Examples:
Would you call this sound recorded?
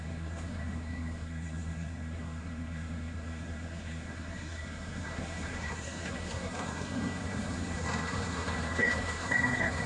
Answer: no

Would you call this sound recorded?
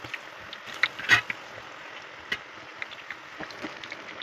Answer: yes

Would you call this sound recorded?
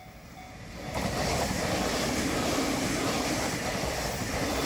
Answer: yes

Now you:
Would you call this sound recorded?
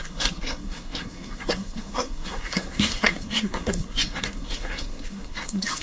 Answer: no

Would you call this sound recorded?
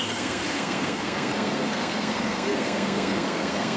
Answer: no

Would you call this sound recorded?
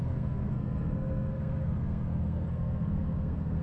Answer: no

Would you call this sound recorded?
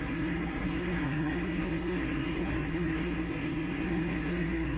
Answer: no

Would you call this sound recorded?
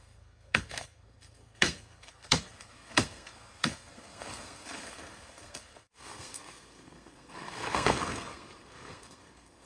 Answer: no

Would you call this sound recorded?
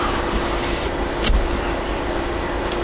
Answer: yes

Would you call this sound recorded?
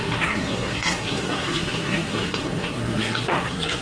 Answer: no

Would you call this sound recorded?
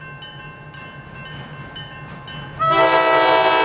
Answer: yes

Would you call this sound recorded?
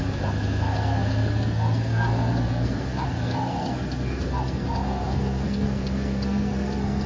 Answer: no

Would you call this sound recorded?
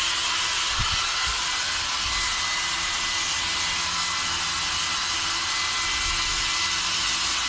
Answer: yes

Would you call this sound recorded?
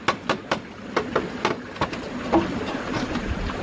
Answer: yes